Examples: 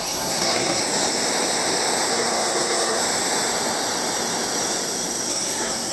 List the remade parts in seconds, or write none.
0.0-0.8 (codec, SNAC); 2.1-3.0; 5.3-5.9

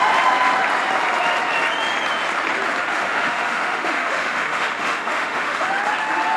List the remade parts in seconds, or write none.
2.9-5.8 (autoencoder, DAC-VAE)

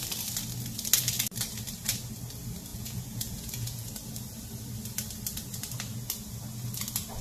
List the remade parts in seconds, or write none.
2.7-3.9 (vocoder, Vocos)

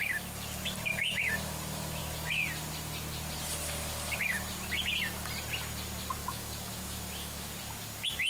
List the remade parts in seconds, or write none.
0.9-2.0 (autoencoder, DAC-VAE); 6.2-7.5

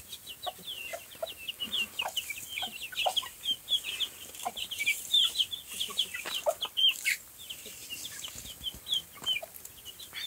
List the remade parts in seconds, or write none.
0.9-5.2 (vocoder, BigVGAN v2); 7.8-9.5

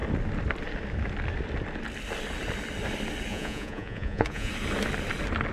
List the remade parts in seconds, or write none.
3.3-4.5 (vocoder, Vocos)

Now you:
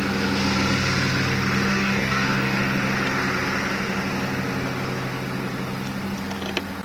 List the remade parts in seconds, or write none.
1.7-2.6 (codec, DAC)

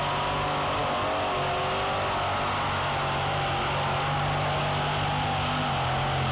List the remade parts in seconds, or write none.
none